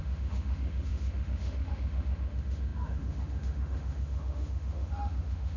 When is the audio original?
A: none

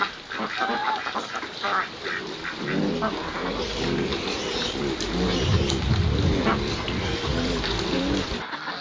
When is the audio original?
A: 0.0-8.8

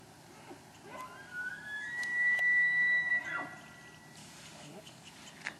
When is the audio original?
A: 0.0-1.3; 3.1-4.2; 5.1-5.6

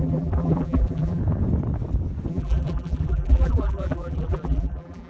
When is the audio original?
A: 1.2-2.3

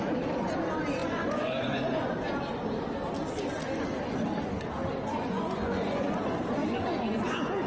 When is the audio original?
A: 0.0-1.0; 2.1-5.1; 6.1-6.6